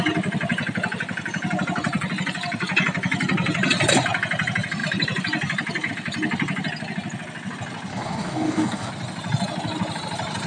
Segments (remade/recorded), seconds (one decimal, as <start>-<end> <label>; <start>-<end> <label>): 0.0-7.9 recorded; 7.9-8.9 remade; 8.9-10.5 recorded